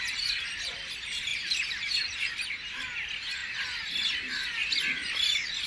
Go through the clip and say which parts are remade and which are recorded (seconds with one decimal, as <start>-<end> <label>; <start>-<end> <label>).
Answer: 0.0-5.7 recorded